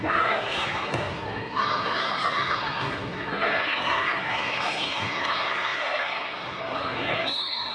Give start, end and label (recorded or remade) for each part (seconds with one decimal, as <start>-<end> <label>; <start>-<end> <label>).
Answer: 0.0-7.7 remade